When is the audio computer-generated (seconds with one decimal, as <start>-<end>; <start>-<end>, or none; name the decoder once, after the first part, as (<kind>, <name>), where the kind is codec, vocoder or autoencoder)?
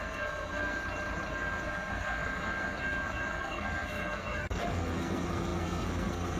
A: 0.0-0.8 (codec, SNAC); 1.3-6.4